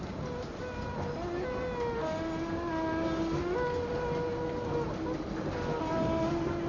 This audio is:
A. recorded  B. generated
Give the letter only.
A